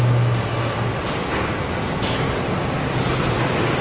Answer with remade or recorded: recorded